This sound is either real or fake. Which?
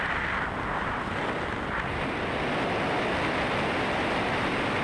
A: fake